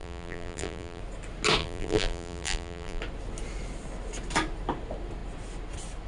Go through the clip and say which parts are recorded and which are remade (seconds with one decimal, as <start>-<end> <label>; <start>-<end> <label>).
0.0-1.0 remade; 1.0-1.6 recorded; 1.6-3.0 remade; 3.0-6.1 recorded